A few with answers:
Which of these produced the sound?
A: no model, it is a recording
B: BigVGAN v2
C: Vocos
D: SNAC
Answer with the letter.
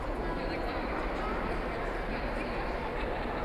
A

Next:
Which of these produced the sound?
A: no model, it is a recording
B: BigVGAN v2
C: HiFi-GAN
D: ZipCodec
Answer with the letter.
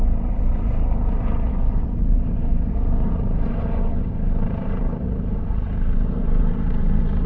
B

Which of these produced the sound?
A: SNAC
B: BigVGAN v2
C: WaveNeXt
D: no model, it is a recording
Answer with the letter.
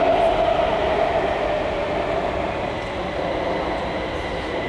D